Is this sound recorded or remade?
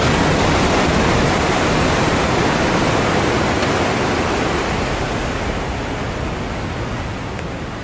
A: recorded